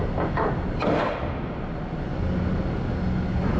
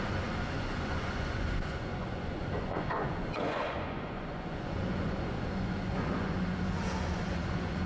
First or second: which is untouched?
first